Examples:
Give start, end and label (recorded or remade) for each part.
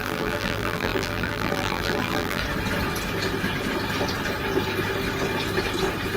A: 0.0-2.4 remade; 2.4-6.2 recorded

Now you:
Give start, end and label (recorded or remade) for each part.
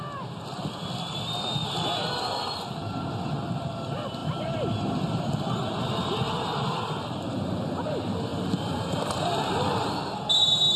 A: 0.0-8.3 recorded; 8.3-9.9 remade; 9.9-10.8 recorded